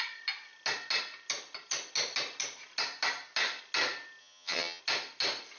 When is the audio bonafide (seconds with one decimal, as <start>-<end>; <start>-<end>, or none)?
0.0-4.2; 4.8-5.6